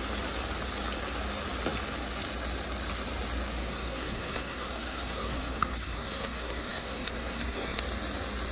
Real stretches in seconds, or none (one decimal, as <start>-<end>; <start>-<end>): 0.0-3.6; 7.8-8.5